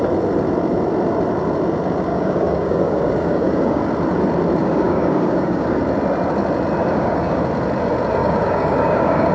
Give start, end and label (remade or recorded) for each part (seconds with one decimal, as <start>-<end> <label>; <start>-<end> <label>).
0.0-2.1 recorded; 2.1-3.8 remade; 3.8-4.6 recorded; 4.6-5.8 remade; 5.8-6.8 recorded; 6.8-7.4 remade; 7.4-8.2 recorded; 8.2-9.3 remade